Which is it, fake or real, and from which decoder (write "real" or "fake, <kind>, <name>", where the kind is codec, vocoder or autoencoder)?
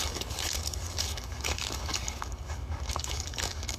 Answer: fake, codec, DAC